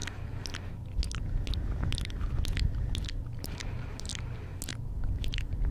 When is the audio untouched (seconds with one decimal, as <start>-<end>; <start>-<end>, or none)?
0.0-3.4; 4.1-4.7